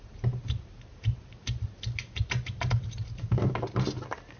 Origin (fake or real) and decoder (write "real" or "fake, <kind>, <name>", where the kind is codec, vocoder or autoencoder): real